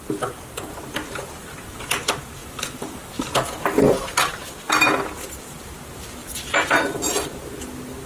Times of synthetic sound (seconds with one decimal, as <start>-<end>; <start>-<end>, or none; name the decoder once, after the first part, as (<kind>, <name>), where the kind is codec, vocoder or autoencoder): 2.4-3.3 (vocoder, BigVGAN v2)